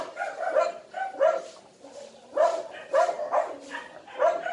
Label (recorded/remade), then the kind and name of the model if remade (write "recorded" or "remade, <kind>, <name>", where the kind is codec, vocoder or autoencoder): recorded